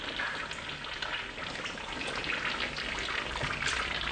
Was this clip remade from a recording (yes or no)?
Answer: no